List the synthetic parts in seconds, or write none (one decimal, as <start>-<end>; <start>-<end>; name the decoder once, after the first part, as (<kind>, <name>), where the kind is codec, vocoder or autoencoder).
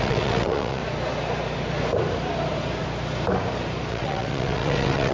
0.0-0.8 (vocoder, WaveNeXt); 3.9-5.1